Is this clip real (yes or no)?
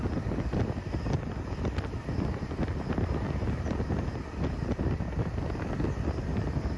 yes